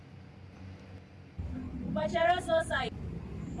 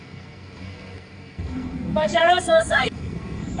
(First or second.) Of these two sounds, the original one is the first